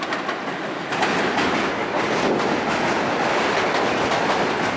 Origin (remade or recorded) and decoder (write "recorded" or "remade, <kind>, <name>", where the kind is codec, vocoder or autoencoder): recorded